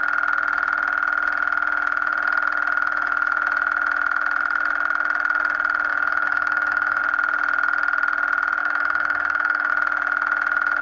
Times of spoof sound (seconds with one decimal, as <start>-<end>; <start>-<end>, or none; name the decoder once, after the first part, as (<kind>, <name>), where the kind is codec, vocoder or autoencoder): 5.9-7.0 (autoencoder, DAC-VAE); 8.6-9.7